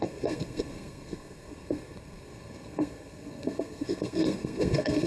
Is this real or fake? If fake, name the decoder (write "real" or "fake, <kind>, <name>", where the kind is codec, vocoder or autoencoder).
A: fake, codec, SNAC